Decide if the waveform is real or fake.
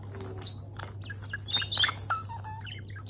real